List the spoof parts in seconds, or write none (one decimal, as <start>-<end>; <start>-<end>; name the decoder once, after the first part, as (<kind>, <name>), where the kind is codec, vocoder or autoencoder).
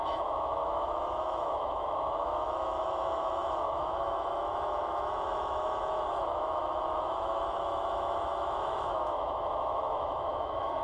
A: 0.0-10.8 (autoencoder, DAC-VAE)